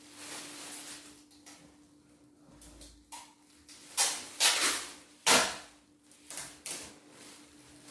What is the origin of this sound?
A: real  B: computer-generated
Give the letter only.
A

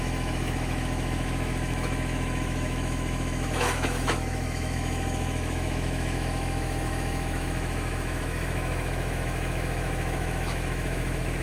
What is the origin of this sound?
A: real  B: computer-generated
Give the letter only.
B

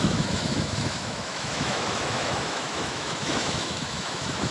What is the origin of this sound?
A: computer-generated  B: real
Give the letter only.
A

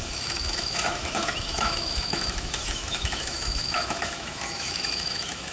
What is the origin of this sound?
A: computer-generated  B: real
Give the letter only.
A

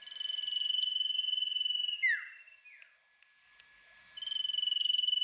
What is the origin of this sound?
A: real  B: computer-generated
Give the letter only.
A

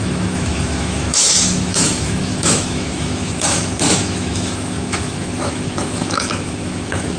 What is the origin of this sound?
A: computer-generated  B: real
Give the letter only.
A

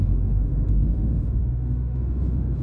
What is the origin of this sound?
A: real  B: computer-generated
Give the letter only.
B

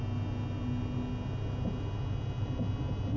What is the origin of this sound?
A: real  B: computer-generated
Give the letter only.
A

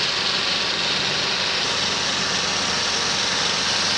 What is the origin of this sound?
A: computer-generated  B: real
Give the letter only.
B